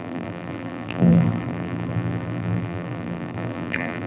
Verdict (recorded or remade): remade